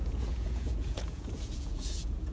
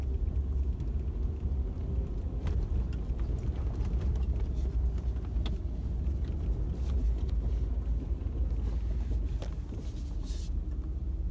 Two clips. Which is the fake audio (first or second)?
first